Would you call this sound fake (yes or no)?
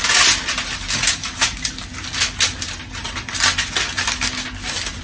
no